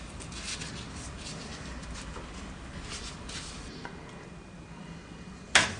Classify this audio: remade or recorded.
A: recorded